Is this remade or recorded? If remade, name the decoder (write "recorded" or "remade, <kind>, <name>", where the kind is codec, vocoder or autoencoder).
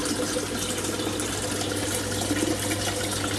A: recorded